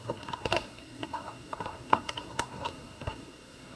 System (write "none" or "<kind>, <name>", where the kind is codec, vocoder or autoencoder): codec, SNAC